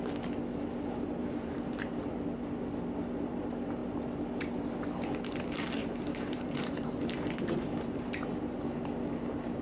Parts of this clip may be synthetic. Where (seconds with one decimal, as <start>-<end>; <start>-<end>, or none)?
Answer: 1.2-2.1; 5.8-8.6